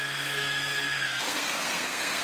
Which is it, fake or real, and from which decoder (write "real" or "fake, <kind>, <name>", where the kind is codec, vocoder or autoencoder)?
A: fake, codec, SNAC